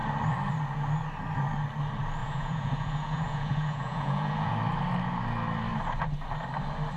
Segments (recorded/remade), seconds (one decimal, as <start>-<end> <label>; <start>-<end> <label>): 0.0-2.2 recorded; 2.2-4.5 remade; 4.5-7.0 recorded